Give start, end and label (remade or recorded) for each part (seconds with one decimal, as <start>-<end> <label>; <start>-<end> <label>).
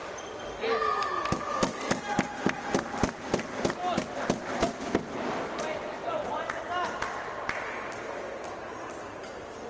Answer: 0.0-9.7 recorded